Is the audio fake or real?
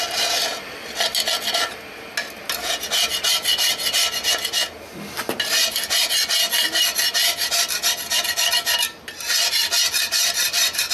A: real